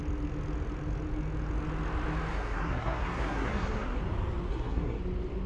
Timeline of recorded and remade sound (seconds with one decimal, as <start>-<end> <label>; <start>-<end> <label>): 0.0-2.3 recorded; 2.3-4.0 remade; 4.0-4.5 recorded; 4.5-5.0 remade; 5.0-5.5 recorded